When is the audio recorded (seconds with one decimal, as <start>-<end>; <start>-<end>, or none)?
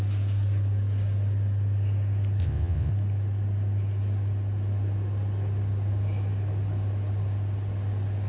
0.0-2.4; 2.9-8.3